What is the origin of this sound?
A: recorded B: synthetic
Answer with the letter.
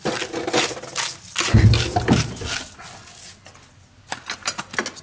A